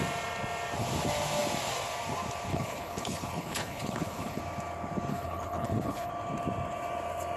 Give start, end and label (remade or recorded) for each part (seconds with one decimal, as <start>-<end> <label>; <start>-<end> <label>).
0.0-2.5 recorded; 2.5-4.4 remade; 4.4-5.1 recorded; 5.1-6.1 remade; 6.1-7.4 recorded

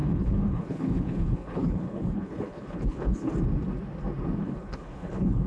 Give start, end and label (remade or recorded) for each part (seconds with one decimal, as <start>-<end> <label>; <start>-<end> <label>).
0.0-3.3 remade; 3.3-4.4 recorded; 4.4-5.5 remade

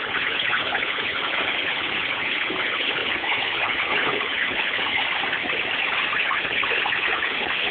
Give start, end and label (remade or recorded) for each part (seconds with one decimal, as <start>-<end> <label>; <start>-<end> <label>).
0.0-5.0 remade; 5.0-6.2 recorded; 6.2-7.7 remade

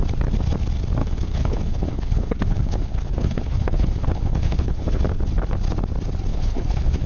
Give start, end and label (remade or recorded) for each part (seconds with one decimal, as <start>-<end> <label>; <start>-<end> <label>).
0.0-1.0 recorded; 1.0-5.0 remade; 5.0-6.3 recorded; 6.3-7.1 remade

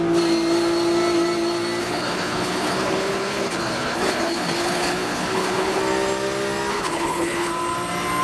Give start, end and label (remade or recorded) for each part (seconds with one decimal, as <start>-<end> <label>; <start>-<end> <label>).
0.0-1.8 recorded; 1.8-5.8 remade; 5.8-6.7 recorded; 6.7-7.5 remade; 7.5-8.2 recorded

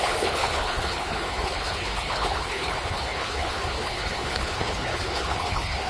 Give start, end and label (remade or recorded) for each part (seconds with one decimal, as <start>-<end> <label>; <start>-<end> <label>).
0.0-5.9 remade

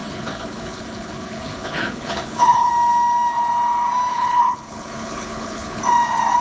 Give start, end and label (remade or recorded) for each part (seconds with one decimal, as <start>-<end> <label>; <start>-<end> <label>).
0.0-2.7 remade; 2.7-4.1 recorded; 4.1-5.8 remade; 5.8-6.4 recorded